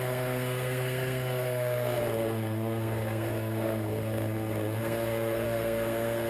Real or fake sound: fake